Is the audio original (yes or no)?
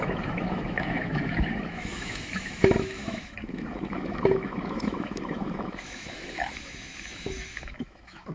no